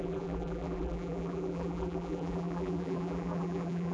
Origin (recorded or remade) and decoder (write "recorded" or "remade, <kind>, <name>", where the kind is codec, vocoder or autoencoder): remade, vocoder, BigVGAN v2